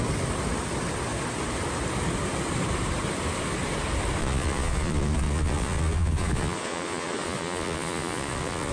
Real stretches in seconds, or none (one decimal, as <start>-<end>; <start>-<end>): 0.0-4.2